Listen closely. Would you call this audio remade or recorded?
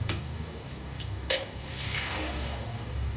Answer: remade